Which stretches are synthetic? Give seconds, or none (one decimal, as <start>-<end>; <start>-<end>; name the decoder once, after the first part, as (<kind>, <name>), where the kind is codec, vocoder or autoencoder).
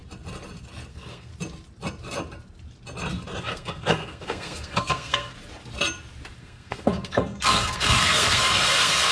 0.9-1.3 (codec, SNAC); 3.4-5.3; 6.4-9.1